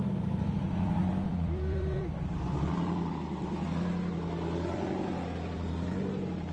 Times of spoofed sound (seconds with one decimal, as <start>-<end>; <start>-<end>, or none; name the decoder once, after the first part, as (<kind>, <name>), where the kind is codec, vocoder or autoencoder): 0.0-6.5 (vocoder, BigVGAN v2)